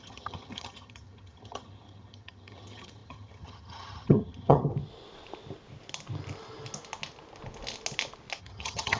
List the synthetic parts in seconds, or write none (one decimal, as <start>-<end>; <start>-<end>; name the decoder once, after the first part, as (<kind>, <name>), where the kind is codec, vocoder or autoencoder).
0.0-4.7 (vocoder, HiFi-GAN); 8.4-9.0